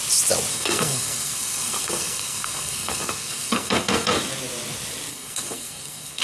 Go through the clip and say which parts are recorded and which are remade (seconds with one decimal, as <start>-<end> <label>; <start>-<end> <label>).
0.0-0.5 recorded; 0.5-4.2 remade; 4.2-5.1 recorded; 5.1-6.2 remade